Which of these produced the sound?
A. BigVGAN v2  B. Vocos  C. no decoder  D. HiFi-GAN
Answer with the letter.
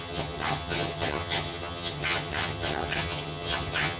D